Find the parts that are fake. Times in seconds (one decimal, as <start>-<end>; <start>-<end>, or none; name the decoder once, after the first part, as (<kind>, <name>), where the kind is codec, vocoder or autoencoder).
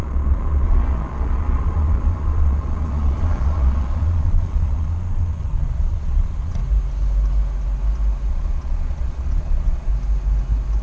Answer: 0.0-6.6 (vocoder, Vocos); 8.3-9.9